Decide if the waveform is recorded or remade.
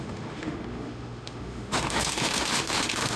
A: remade